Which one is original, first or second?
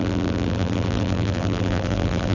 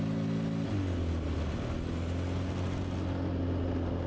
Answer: second